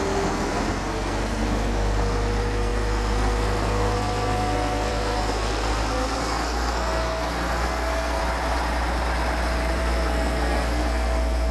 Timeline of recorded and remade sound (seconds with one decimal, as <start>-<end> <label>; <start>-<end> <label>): 0.0-8.2 remade; 8.2-9.8 recorded; 9.8-11.5 remade